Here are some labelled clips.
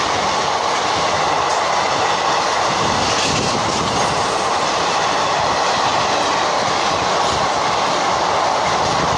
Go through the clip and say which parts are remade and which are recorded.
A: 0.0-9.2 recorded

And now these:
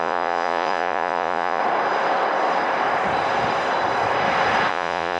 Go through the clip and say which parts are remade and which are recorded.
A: 0.0-1.6 remade; 1.6-4.7 recorded; 4.7-5.2 remade

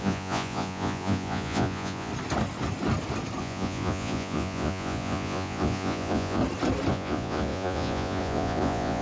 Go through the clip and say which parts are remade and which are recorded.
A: 0.0-2.1 remade; 2.1-3.4 recorded; 3.4-6.4 remade; 6.4-6.9 recorded; 6.9-9.0 remade

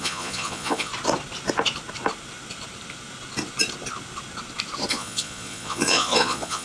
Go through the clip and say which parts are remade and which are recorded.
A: 0.0-0.9 remade; 0.9-4.9 recorded; 4.9-6.6 remade

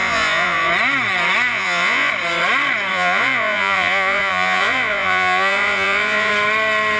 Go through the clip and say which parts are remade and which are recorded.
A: 0.0-0.7 remade; 0.7-1.5 recorded; 1.5-2.1 remade; 2.1-2.9 recorded; 2.9-6.3 remade; 6.3-7.0 recorded

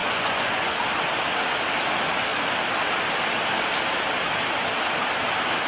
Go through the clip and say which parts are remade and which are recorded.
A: 0.0-0.7 remade; 0.7-5.7 recorded